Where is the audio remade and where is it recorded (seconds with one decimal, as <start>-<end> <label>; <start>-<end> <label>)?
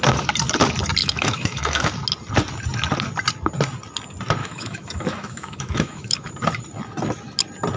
0.0-1.0 recorded; 1.0-1.9 remade; 1.9-4.4 recorded; 4.4-6.3 remade; 6.3-7.8 recorded